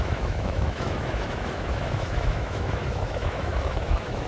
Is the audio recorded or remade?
remade